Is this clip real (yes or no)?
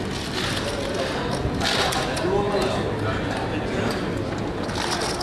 yes